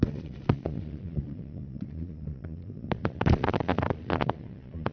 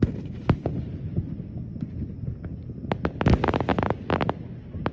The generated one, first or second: first